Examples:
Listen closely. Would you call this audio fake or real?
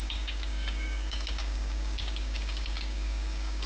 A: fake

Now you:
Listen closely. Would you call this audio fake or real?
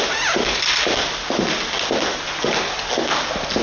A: real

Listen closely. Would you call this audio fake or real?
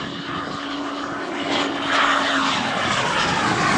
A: fake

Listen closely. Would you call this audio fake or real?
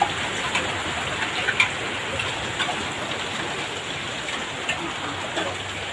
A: real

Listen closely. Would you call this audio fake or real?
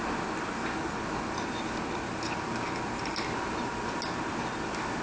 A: real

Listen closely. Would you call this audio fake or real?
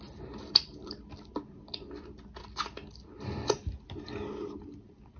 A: real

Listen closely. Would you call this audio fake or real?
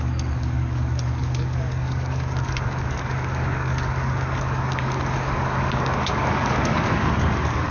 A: fake